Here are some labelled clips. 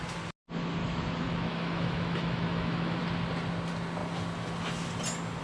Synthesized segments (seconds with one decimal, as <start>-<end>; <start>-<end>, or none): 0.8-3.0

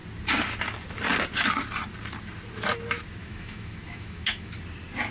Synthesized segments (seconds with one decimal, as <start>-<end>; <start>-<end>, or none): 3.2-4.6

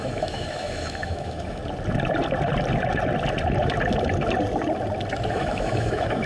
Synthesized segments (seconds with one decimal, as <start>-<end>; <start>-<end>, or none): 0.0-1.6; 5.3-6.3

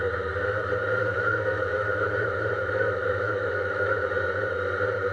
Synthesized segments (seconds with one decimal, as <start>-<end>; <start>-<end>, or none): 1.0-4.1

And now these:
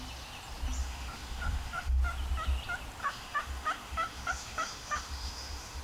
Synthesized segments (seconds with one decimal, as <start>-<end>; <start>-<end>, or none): 0.8-2.0; 3.0-5.8